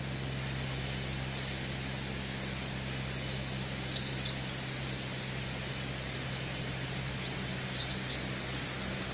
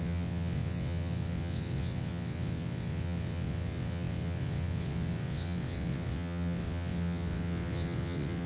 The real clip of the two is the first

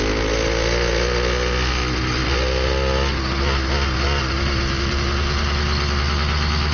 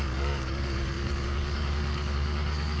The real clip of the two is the first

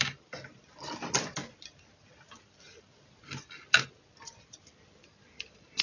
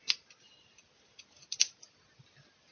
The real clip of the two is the second